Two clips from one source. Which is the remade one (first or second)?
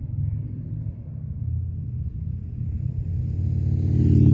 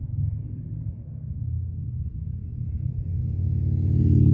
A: second